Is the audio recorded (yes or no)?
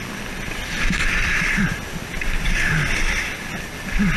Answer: yes